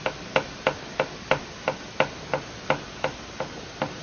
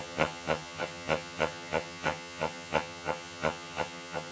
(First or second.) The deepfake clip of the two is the second